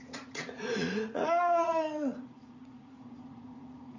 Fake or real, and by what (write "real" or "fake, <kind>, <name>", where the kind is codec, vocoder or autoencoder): fake, vocoder, Vocos